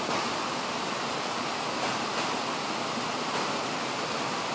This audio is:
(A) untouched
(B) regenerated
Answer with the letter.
A